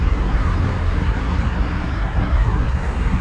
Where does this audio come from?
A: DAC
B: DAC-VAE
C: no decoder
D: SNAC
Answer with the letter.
D